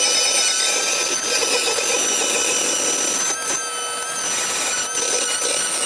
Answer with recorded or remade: recorded